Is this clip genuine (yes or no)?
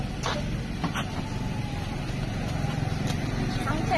yes